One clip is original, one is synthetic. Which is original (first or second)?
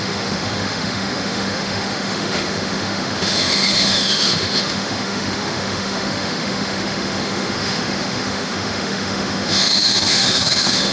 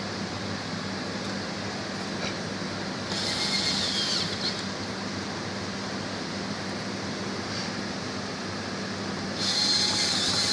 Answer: second